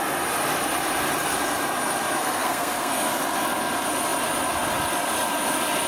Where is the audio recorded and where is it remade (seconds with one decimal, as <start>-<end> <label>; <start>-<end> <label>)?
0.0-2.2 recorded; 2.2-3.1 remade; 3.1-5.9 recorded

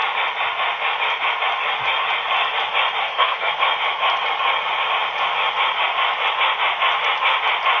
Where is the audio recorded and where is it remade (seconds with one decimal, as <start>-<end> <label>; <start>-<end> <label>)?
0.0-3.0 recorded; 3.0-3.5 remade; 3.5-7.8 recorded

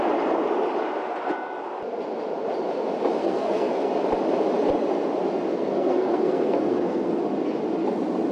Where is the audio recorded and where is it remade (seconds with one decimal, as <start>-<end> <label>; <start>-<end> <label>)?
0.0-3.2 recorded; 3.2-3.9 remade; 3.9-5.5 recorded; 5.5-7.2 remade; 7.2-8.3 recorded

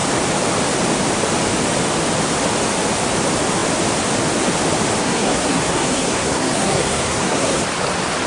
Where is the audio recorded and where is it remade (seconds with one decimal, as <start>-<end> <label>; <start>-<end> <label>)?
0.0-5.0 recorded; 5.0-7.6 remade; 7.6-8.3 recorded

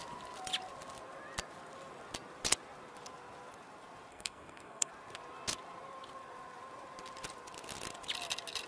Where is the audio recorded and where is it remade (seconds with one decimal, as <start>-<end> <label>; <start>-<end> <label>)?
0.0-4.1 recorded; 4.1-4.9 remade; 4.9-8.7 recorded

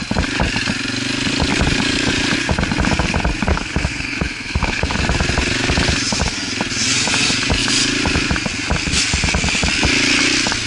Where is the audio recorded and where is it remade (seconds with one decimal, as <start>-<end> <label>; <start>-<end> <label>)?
0.0-3.5 recorded; 3.5-5.0 remade; 5.0-10.7 recorded

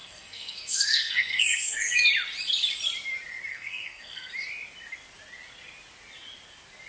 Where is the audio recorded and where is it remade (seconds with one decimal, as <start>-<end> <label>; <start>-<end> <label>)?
0.0-2.1 remade; 2.1-3.5 recorded; 3.5-4.3 remade; 4.3-6.9 recorded